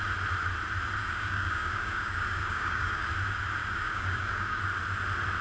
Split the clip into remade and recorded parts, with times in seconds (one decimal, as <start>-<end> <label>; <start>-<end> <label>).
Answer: 0.0-1.0 recorded; 1.0-3.1 remade; 3.1-3.6 recorded; 3.6-4.6 remade; 4.6-5.4 recorded